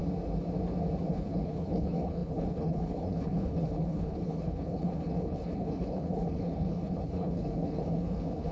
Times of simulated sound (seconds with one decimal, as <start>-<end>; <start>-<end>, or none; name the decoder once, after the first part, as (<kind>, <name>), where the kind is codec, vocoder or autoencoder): 1.1-8.5 (codec, HILCodec)